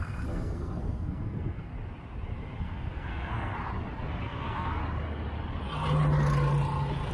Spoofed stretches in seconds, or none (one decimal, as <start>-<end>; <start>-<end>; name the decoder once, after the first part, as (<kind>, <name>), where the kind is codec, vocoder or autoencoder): 0.0-1.7 (codec, SNAC); 2.6-3.5; 4.2-4.8